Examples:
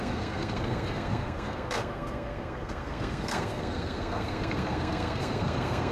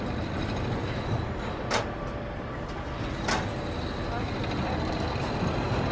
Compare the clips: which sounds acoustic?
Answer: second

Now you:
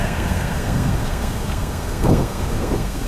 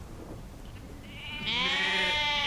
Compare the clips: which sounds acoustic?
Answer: second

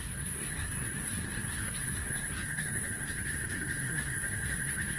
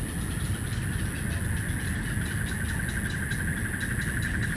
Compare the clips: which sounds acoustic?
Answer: second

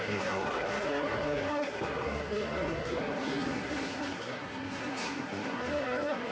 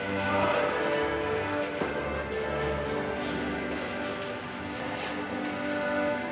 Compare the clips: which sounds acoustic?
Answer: second